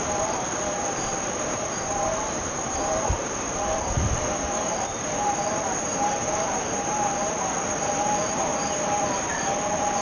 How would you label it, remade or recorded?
remade